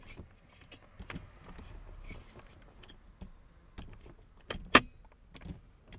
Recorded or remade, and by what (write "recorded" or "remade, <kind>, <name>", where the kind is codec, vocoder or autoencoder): recorded